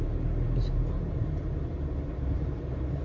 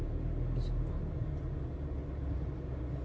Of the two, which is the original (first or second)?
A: second